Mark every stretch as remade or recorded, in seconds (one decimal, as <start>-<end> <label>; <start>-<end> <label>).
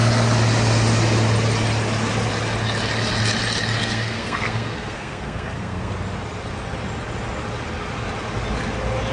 0.0-3.8 recorded; 3.8-5.9 remade; 5.9-9.1 recorded